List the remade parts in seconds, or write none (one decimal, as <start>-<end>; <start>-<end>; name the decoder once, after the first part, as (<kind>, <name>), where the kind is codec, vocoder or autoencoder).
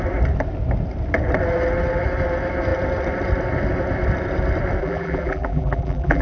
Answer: 4.8-6.2 (vocoder, BigVGAN v2)